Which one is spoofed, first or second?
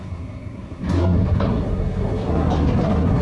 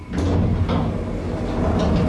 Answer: first